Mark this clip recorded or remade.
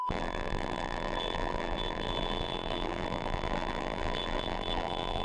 remade